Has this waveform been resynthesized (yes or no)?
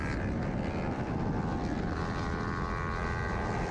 no